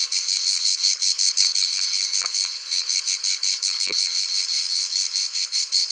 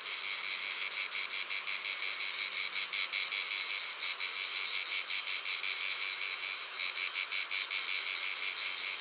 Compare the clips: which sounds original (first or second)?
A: second